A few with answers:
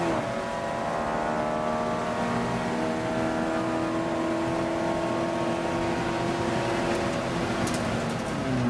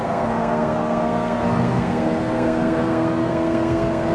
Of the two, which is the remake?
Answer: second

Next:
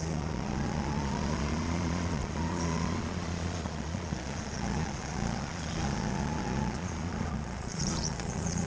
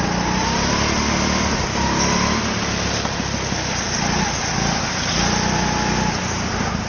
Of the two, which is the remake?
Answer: first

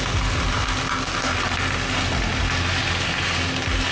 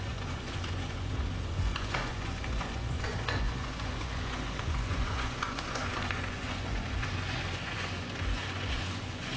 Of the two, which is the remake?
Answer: second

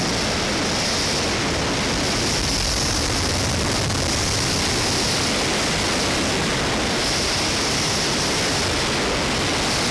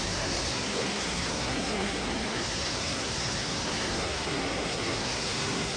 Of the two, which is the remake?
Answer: second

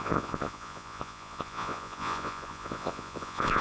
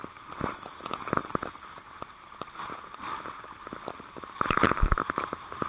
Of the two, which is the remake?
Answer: first